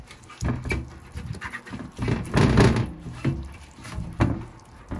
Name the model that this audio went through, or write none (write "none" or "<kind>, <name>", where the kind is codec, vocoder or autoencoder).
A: none